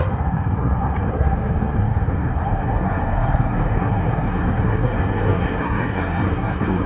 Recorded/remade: remade